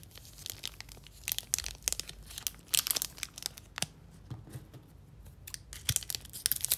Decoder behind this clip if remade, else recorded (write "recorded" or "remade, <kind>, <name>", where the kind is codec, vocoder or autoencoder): recorded